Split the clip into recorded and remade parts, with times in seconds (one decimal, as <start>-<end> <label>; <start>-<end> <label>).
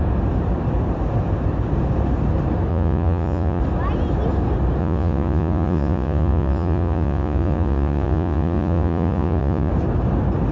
0.0-2.7 recorded; 2.7-3.6 remade; 3.6-4.8 recorded; 4.8-9.7 remade; 9.7-10.5 recorded